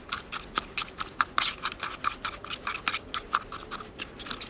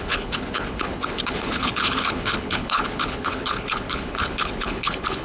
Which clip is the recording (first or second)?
first